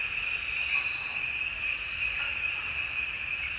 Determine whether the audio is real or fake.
real